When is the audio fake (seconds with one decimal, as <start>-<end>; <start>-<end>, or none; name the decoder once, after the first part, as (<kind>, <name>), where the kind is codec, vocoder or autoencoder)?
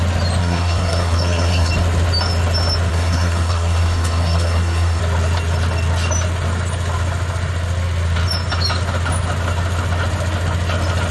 0.4-1.7 (codec, SNAC); 2.9-5.0